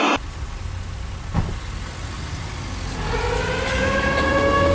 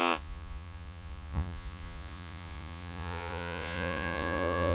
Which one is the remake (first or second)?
second